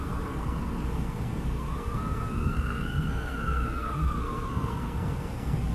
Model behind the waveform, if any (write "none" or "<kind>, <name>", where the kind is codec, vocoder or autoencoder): codec, SNAC